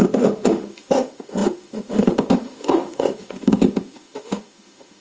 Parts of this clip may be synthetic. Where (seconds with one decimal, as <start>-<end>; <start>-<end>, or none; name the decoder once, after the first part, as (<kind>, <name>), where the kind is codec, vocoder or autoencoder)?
0.0-5.0 (autoencoder, DAC-VAE)